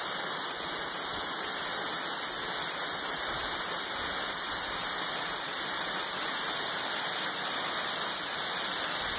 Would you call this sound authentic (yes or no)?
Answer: yes